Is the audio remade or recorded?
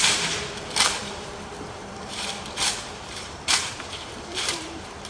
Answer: remade